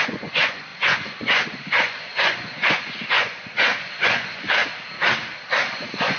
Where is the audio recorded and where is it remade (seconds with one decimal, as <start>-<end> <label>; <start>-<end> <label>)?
0.0-4.6 remade; 4.6-5.7 recorded; 5.7-6.2 remade